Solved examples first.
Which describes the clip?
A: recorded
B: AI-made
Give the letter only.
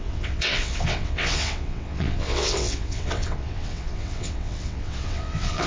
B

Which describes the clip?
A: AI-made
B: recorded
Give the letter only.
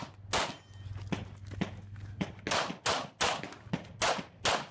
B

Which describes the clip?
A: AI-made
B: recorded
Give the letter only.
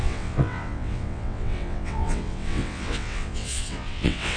A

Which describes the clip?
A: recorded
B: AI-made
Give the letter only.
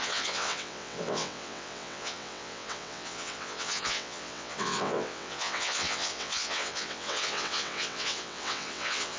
B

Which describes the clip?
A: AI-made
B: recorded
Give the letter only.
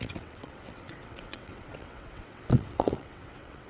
A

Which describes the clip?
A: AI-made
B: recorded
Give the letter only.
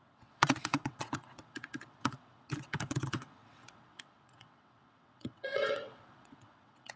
A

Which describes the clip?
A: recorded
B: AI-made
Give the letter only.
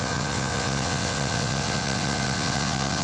B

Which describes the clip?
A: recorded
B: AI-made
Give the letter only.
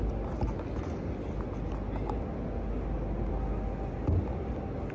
A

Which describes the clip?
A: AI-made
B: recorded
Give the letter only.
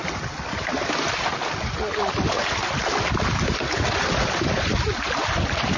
B